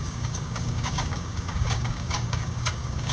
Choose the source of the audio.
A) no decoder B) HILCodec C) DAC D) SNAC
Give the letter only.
C